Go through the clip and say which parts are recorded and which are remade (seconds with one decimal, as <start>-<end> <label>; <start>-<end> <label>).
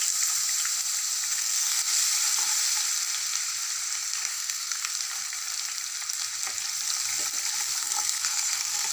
0.0-1.3 recorded; 1.3-1.8 remade; 1.8-4.3 recorded; 4.3-4.9 remade; 4.9-7.8 recorded; 7.8-8.9 remade